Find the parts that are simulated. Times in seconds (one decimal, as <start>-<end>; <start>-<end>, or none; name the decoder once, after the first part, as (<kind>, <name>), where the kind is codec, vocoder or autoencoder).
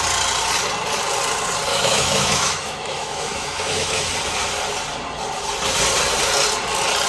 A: 1.7-4.1 (autoencoder, DAC-VAE)